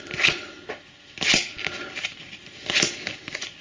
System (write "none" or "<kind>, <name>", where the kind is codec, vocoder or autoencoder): none